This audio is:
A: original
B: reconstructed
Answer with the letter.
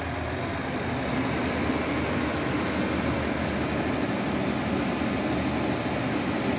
A